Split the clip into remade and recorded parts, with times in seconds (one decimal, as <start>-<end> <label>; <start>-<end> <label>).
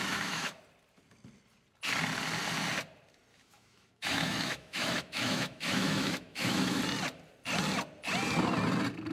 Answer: 0.0-0.6 remade; 0.6-3.3 recorded; 3.3-6.8 remade; 6.8-9.1 recorded